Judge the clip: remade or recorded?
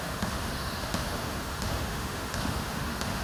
remade